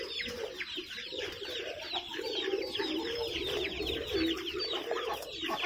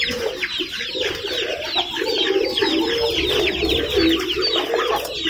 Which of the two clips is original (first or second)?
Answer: second